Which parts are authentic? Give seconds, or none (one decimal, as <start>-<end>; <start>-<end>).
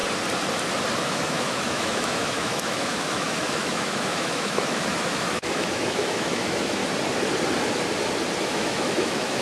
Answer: 0.0-1.0; 6.8-8.4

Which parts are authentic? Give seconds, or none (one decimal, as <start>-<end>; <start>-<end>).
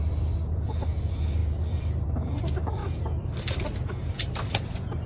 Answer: 2.8-3.4